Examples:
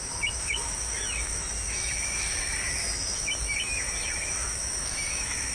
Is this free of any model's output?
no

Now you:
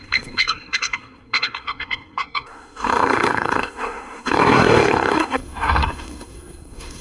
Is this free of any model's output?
no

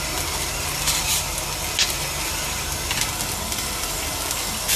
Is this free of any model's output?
yes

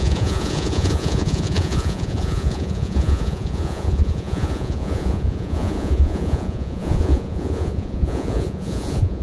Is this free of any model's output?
no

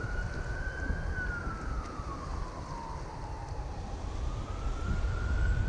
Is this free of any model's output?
yes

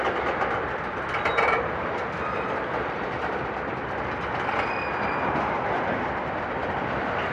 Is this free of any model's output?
no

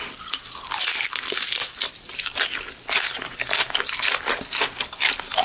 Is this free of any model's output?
yes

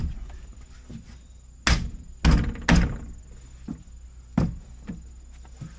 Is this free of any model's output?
yes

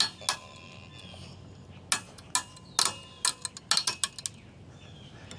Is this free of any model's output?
yes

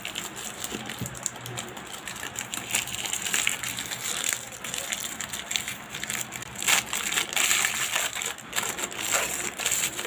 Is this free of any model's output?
no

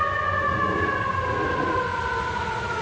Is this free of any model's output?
yes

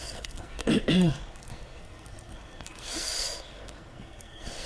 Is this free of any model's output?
no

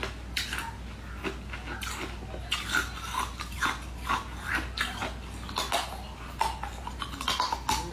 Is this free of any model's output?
yes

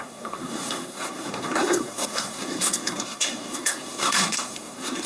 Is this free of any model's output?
no